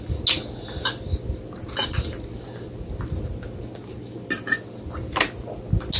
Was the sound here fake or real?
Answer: real